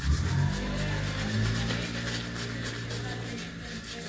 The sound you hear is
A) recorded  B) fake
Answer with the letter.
A